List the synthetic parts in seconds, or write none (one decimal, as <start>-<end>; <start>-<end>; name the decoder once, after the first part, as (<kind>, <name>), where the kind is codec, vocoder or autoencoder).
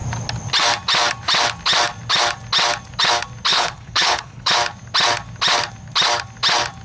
3.5-4.5 (codec, HILCodec)